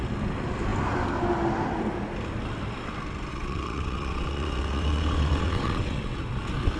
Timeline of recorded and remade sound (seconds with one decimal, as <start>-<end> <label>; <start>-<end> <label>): 0.0-3.3 recorded; 3.3-6.2 remade; 6.2-6.8 recorded